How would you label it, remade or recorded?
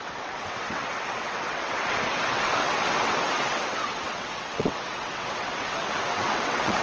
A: remade